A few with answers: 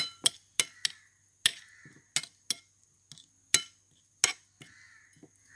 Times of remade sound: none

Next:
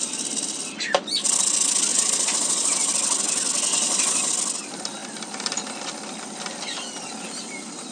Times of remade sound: 1.9-2.9; 3.7-4.3